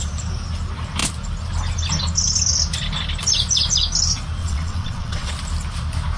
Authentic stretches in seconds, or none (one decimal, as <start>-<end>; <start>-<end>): 0.0-4.4; 5.3-6.2